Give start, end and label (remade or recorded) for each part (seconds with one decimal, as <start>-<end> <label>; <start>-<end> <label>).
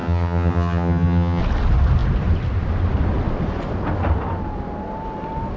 0.0-1.4 remade; 1.4-5.6 recorded